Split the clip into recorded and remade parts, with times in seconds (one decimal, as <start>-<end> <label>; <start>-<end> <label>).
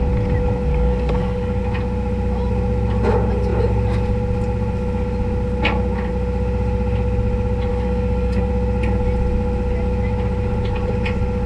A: 0.0-0.7 recorded; 0.7-1.6 remade; 1.6-7.7 recorded; 7.7-8.5 remade; 8.5-11.5 recorded